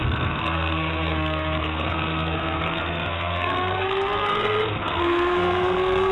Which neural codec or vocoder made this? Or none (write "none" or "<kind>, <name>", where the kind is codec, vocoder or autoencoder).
codec, SNAC